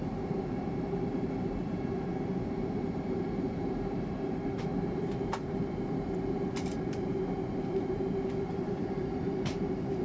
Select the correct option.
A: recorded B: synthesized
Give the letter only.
B